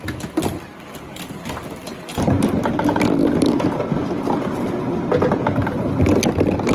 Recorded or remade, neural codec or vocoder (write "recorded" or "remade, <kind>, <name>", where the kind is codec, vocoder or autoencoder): recorded